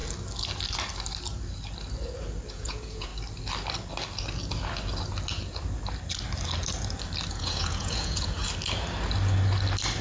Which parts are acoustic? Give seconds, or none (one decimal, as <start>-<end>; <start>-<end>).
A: 0.0-2.5; 3.1-7.3; 8.4-10.0